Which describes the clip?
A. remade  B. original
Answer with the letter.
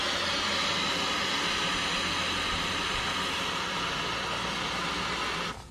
B